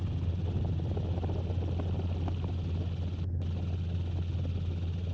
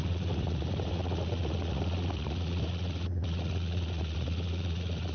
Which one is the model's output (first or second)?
second